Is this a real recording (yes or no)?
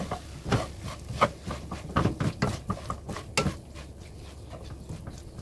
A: yes